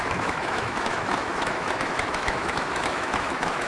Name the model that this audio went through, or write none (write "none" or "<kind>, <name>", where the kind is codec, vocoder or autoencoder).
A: autoencoder, DAC-VAE